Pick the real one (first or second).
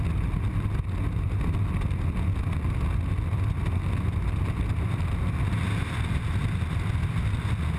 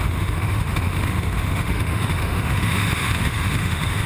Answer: first